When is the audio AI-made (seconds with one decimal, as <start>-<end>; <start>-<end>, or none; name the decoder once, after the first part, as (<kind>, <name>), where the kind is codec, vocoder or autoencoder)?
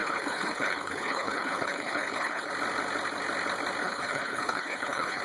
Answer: 0.0-2.5 (codec, HILCodec); 3.8-5.2